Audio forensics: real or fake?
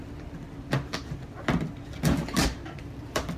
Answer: fake